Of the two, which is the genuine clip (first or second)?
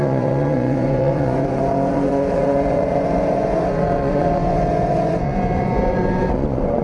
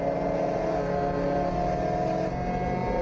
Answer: second